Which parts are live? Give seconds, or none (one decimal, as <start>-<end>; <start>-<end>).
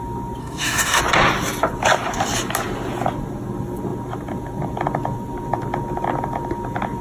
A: 0.0-0.4; 1.0-7.0